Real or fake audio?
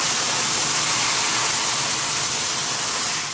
real